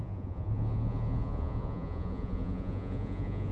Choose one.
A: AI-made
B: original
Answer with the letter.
A